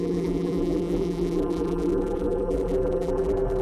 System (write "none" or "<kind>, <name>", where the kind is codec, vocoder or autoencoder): vocoder, BigVGAN v2